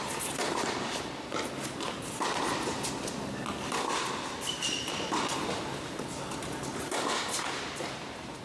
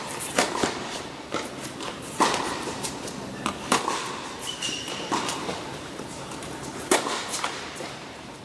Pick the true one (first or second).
first